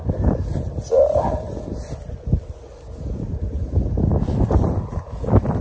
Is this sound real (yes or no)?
yes